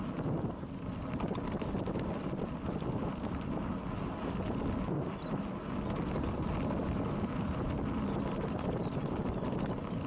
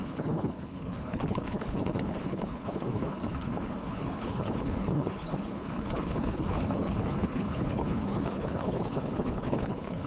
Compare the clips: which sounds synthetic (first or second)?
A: second